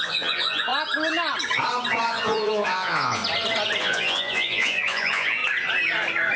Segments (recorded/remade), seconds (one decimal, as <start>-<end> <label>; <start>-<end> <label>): 0.0-0.7 remade; 0.7-2.1 recorded; 2.1-3.2 remade; 3.2-3.8 recorded; 3.8-5.4 remade; 5.4-6.4 recorded